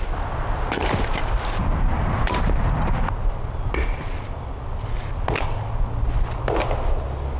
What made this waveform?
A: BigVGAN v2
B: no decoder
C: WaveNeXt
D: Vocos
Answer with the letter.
B